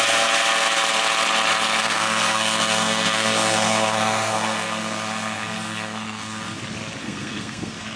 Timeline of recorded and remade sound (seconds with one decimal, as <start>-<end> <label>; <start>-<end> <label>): 0.0-1.8 recorded; 1.8-6.6 remade; 6.6-7.0 recorded; 7.0-8.0 remade